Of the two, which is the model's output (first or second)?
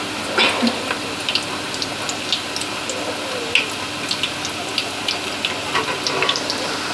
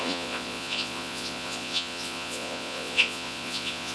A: second